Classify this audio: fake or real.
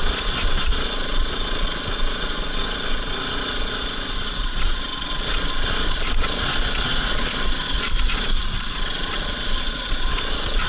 fake